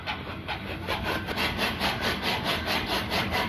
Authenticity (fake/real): real